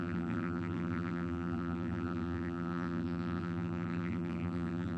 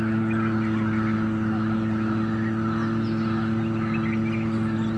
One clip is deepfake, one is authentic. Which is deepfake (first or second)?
first